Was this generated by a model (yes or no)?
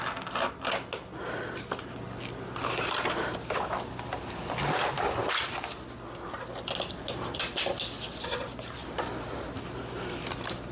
no